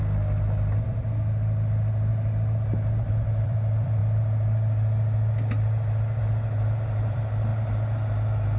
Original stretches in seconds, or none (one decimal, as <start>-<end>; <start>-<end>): 2.1-3.1; 4.0-6.2